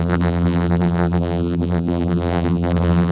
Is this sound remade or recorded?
remade